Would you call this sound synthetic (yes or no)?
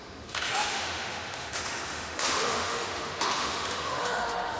yes